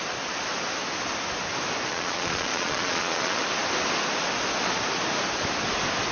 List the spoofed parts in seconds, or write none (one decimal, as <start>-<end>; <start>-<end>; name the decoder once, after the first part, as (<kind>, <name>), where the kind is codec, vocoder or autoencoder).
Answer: 1.9-3.4 (vocoder, Vocos)